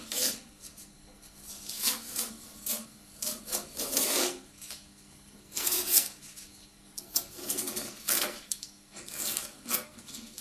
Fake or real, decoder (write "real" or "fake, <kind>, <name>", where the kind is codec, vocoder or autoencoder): fake, codec, SNAC